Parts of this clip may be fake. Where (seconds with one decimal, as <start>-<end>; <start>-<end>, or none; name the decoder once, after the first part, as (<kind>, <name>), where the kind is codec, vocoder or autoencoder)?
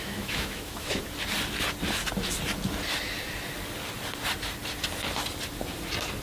0.0-1.0 (autoencoder, DAC-VAE)